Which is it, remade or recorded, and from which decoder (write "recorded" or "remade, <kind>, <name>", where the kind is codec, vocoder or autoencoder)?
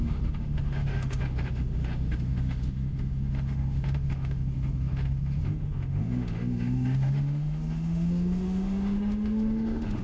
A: remade, autoencoder, DAC-VAE